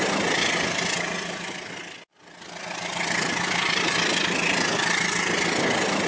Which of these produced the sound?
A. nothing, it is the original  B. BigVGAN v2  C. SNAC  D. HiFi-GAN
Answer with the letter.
A